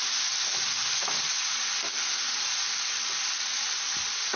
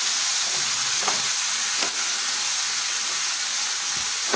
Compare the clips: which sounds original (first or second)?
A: first